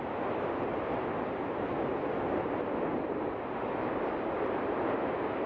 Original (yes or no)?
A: yes